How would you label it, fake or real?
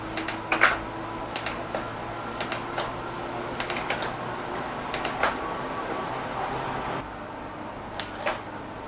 real